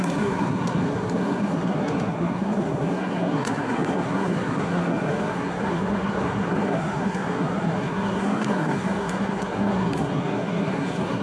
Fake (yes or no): yes